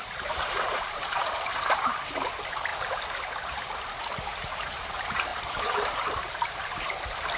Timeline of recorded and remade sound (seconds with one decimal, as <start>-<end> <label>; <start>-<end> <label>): 0.0-2.7 remade; 2.7-4.0 recorded; 4.0-7.4 remade